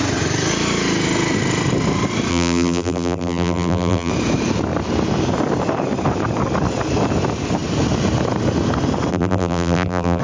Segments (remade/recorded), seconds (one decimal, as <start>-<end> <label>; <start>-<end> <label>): 0.0-2.3 recorded; 2.3-4.1 remade; 4.1-9.1 recorded; 9.1-10.2 remade